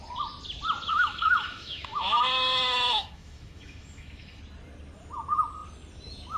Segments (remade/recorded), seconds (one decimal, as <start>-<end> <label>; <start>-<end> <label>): 0.0-0.9 recorded; 0.9-4.4 remade; 4.4-6.4 recorded